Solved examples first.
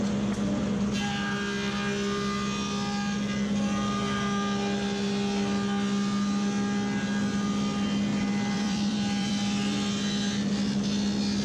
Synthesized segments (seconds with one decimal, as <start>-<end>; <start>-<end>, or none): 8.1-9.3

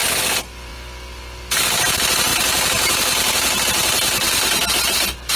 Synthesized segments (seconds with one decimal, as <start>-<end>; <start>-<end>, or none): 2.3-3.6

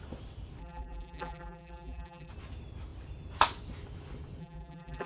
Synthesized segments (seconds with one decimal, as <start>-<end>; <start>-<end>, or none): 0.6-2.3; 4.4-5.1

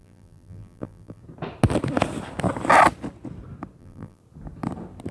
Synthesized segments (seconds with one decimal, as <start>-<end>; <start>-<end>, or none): 0.0-1.2; 3.8-4.2

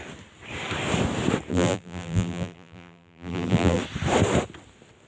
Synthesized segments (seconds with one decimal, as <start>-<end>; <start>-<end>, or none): 1.5-3.8